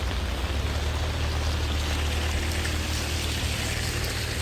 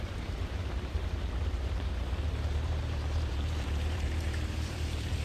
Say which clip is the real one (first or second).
first